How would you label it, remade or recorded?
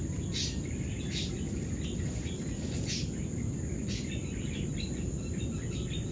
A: recorded